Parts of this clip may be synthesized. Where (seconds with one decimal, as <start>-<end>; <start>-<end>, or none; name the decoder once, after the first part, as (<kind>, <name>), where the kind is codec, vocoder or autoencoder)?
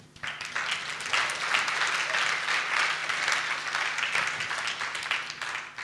none